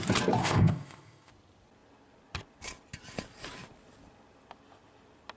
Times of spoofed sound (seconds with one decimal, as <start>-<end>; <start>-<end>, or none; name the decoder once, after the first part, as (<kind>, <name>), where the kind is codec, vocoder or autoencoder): 0.4-1.3 (codec, ZipCodec)